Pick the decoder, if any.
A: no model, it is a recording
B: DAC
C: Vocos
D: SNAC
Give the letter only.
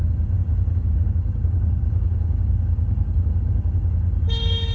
B